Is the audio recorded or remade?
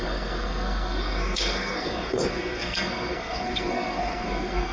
remade